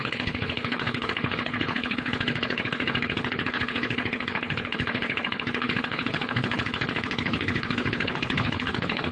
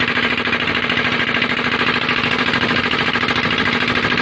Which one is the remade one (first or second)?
first